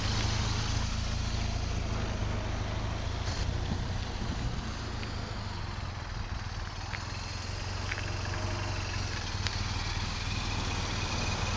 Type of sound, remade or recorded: recorded